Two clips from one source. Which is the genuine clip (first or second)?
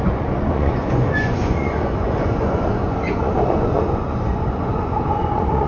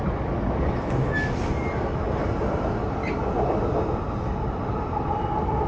second